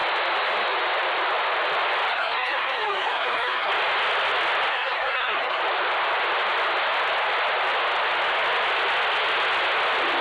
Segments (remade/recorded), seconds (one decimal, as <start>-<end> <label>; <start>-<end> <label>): 0.0-2.1 recorded; 2.1-3.7 remade; 3.7-4.7 recorded; 4.7-5.6 remade; 5.6-10.2 recorded